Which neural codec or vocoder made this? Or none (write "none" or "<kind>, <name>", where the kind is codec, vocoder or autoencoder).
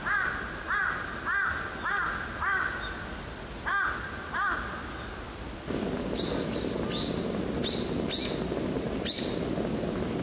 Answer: none